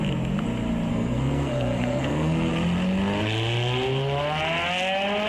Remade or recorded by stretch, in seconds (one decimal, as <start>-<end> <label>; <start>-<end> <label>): 0.0-0.9 recorded; 0.9-2.5 remade; 2.5-5.3 recorded

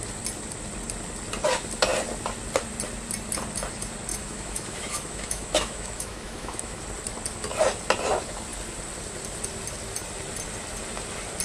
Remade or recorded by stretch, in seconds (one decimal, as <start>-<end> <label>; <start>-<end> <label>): 0.0-4.1 recorded; 4.1-6.8 remade; 6.8-11.4 recorded

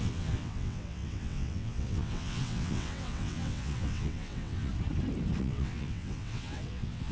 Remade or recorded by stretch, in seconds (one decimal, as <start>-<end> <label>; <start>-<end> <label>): 0.0-4.7 remade; 4.7-5.4 recorded; 5.4-7.1 remade

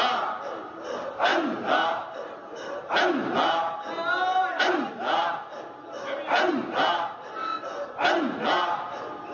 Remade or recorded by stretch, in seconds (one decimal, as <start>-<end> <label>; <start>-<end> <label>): 0.0-9.3 recorded